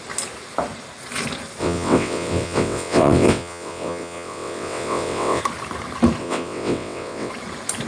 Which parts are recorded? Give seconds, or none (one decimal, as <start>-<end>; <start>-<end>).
0.0-1.6; 5.4-6.2; 7.3-7.9